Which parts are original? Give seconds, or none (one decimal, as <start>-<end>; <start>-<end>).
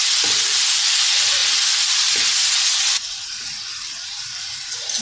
1.4-2.7